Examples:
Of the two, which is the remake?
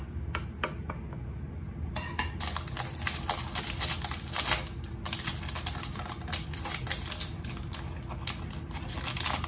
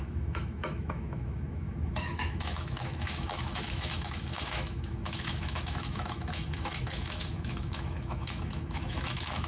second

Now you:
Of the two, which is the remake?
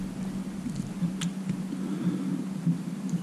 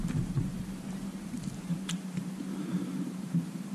second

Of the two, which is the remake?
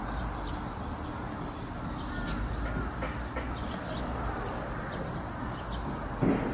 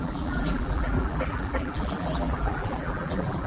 second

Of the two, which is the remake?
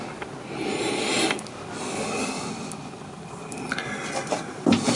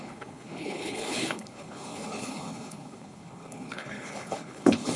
second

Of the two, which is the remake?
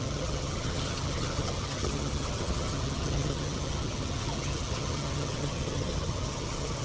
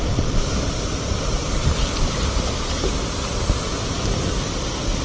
first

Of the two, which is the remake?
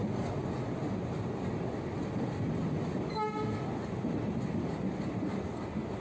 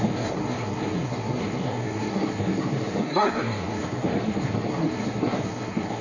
second